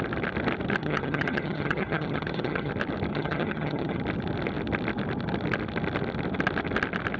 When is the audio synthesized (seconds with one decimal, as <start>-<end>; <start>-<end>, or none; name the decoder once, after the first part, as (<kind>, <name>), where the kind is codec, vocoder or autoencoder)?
0.8-2.7 (vocoder, HiFi-GAN); 3.1-4.0

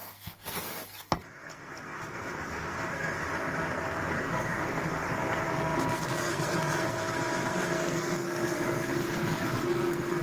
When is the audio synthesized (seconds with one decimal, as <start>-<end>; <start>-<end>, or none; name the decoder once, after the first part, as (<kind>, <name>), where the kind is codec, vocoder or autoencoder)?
0.0-3.2 (codec, SNAC); 3.7-10.2

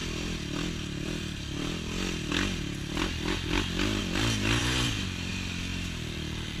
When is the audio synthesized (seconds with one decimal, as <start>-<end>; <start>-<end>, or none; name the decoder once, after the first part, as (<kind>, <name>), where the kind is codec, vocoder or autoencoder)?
0.0-4.0 (vocoder, BigVGAN v2); 4.6-5.3; 5.7-6.6

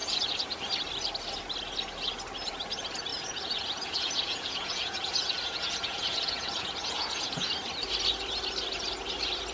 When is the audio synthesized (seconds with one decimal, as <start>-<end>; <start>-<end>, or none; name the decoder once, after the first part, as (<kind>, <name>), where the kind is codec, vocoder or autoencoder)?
0.0-0.5 (vocoder, Vocos); 3.1-7.5

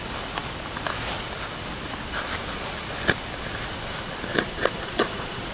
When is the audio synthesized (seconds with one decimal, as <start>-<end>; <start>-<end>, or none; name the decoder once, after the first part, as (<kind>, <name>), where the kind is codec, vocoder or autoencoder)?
4.3-5.5 (vocoder, Vocos)

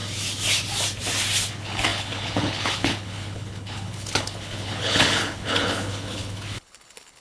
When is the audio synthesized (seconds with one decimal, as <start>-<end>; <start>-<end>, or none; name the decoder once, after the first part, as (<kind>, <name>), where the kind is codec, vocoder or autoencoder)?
1.5-7.2 (codec, HILCodec)

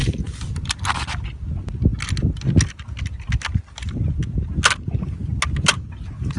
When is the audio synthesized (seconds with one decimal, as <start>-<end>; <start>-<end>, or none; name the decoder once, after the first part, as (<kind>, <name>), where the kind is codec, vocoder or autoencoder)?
none

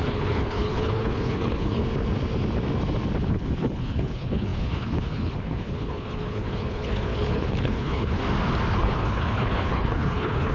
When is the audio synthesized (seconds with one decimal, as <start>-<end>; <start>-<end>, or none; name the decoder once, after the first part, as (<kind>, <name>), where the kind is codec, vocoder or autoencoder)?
0.0-1.8 (codec, HILCodec); 3.3-8.2; 8.7-10.5